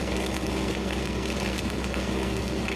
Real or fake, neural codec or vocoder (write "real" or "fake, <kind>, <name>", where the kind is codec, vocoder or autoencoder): fake, codec, SNAC